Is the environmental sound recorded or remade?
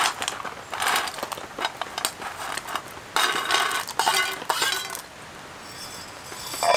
recorded